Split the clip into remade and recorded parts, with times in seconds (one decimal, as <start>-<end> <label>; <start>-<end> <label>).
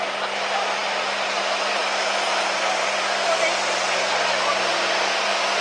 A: 0.0-5.6 recorded